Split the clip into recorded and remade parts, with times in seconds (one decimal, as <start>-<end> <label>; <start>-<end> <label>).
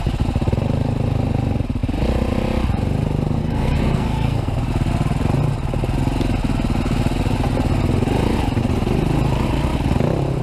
0.0-3.4 recorded; 3.4-4.7 remade; 4.7-10.4 recorded